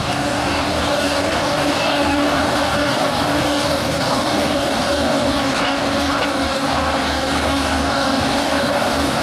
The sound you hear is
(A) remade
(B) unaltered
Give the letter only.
A